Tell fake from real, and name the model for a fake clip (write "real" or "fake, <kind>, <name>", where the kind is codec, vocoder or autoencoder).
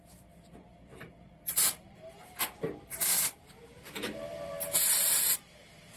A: fake, vocoder, BigVGAN v2